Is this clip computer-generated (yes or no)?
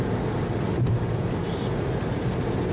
no